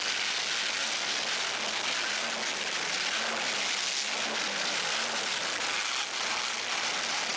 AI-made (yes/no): no